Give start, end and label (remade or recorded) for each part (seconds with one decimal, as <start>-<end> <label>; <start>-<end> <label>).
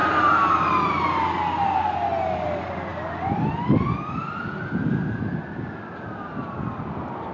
0.0-7.3 recorded